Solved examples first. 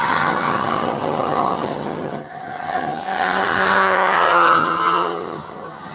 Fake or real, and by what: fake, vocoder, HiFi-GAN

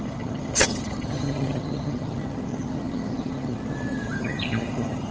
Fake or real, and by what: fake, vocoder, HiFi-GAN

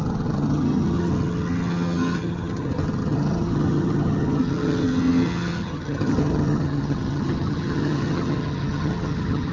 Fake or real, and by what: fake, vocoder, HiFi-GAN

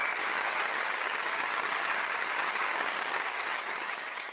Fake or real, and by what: fake, vocoder, HiFi-GAN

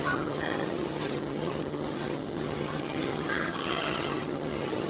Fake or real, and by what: fake, vocoder, HiFi-GAN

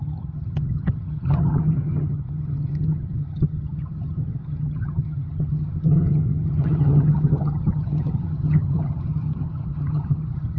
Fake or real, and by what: fake, vocoder, HiFi-GAN